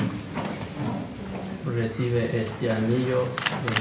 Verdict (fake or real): real